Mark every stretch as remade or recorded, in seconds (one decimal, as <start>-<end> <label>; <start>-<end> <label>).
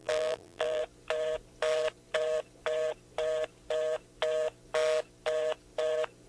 0.0-0.8 remade; 0.8-6.3 recorded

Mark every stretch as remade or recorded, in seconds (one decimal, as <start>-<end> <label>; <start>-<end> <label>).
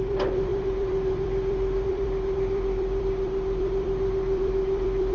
0.0-5.1 remade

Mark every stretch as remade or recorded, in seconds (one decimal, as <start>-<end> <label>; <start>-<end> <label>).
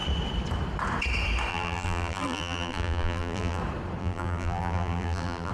0.0-1.5 recorded; 1.5-3.6 remade; 3.6-4.0 recorded; 4.0-5.5 remade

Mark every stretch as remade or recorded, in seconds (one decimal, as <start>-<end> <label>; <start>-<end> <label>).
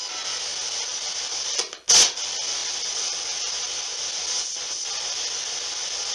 0.0-0.5 recorded; 0.5-1.1 remade; 1.1-2.6 recorded; 2.6-3.5 remade; 3.5-6.1 recorded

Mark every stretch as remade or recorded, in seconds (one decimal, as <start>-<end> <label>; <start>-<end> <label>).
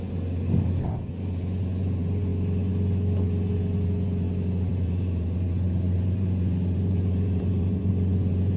0.0-4.7 recorded; 4.7-7.9 remade; 7.9-8.6 recorded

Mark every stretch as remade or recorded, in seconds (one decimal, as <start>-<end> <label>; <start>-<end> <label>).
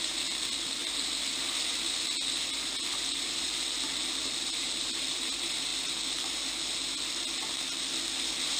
0.0-5.7 remade; 5.7-7.8 recorded; 7.8-8.6 remade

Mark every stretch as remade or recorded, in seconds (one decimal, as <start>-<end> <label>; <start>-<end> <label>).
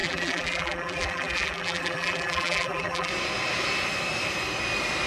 0.0-3.1 remade; 3.1-5.1 recorded